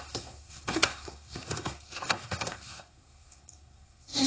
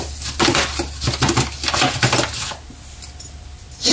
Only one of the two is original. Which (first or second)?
second